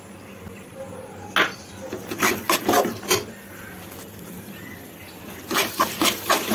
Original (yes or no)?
yes